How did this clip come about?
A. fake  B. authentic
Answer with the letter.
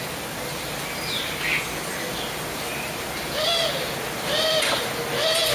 B